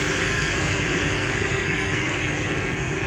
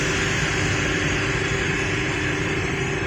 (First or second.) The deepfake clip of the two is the first